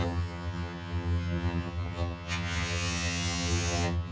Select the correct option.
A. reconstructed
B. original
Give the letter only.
A